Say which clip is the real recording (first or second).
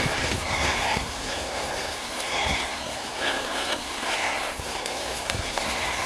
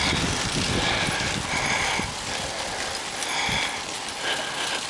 second